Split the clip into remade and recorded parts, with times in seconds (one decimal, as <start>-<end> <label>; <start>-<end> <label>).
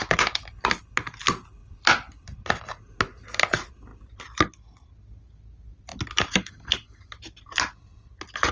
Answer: 0.0-1.6 recorded; 1.6-2.5 remade; 2.5-3.9 recorded; 3.9-5.0 remade; 5.0-5.9 recorded; 5.9-6.5 remade; 6.5-8.5 recorded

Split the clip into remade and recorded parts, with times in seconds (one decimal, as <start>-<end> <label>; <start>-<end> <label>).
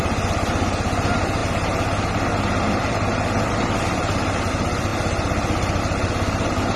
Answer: 0.0-6.8 remade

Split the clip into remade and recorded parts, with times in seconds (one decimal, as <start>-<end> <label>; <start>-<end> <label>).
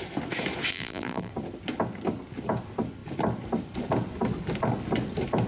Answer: 0.0-0.7 recorded; 0.7-1.3 remade; 1.3-5.5 recorded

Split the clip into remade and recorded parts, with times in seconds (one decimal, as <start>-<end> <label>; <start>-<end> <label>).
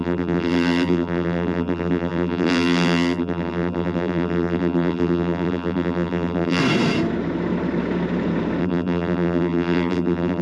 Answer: 0.0-6.6 remade; 6.6-8.6 recorded; 8.6-10.4 remade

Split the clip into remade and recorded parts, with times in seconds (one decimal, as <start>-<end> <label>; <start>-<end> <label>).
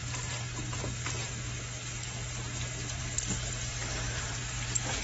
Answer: 0.0-3.8 recorded; 3.8-4.3 remade; 4.3-5.0 recorded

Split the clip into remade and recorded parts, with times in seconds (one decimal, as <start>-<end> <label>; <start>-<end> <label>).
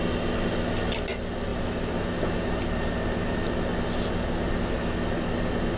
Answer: 0.0-1.5 recorded; 1.5-2.5 remade; 2.5-5.8 recorded